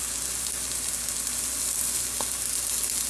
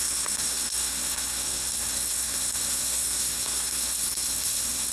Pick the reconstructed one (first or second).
second